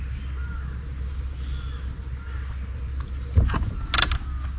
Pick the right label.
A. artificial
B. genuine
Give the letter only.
B